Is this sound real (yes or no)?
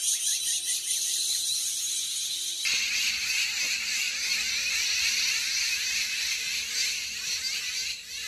yes